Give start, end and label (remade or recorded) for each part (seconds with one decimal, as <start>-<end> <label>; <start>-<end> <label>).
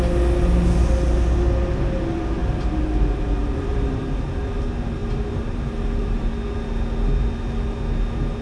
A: 0.0-2.4 recorded; 2.4-4.5 remade; 4.5-5.0 recorded; 5.0-6.3 remade; 6.3-8.4 recorded